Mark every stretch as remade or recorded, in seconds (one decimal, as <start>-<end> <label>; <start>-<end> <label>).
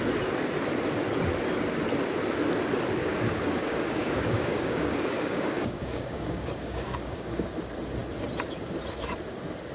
0.0-3.0 recorded; 3.0-7.5 remade; 7.5-9.7 recorded